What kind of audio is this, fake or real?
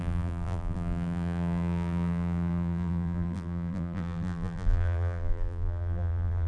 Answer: fake